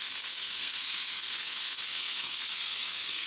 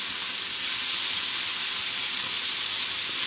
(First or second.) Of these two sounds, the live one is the second